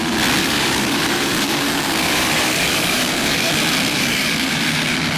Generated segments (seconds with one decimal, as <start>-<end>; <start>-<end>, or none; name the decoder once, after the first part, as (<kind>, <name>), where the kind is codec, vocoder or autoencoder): 0.4-3.5 (codec, DAC); 3.9-5.2